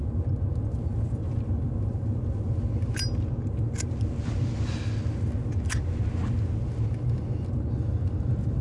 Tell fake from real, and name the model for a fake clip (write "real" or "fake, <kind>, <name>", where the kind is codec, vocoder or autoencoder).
real